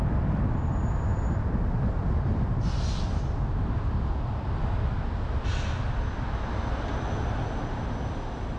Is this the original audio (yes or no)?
yes